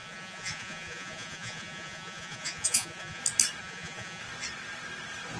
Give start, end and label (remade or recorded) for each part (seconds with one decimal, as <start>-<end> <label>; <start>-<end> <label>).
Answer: 0.0-3.2 remade; 3.2-3.6 recorded; 3.6-4.2 remade; 4.2-5.4 recorded